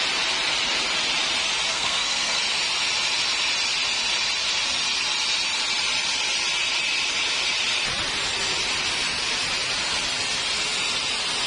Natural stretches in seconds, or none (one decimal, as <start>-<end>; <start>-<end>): 0.0-1.7; 2.4-11.5